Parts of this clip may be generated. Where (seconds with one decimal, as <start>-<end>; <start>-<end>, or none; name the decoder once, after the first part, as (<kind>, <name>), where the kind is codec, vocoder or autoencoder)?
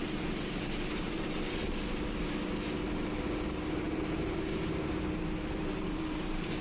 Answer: 0.0-1.6 (vocoder, BigVGAN v2); 5.6-6.6